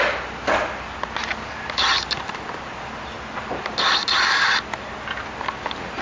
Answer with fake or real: real